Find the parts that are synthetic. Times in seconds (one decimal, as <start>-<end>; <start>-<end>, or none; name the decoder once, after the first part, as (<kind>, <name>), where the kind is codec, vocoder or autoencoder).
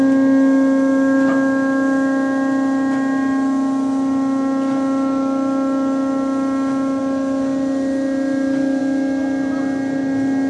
none